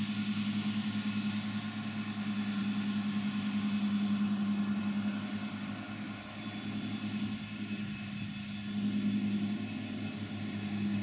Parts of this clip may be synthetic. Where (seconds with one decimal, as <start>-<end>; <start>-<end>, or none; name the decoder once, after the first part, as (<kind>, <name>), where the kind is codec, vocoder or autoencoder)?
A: none